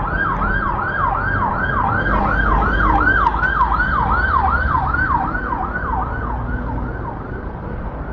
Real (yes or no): yes